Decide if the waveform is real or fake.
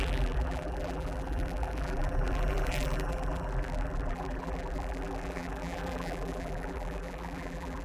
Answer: fake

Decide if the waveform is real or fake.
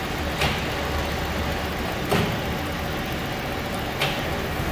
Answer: real